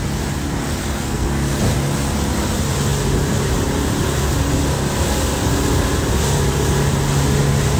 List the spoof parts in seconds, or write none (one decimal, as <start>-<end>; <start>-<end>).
0.8-1.6